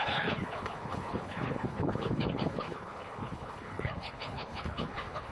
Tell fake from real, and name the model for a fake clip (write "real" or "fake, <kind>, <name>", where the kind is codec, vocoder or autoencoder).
fake, codec, HILCodec